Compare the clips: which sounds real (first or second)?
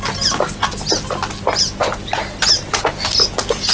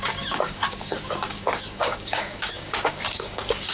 first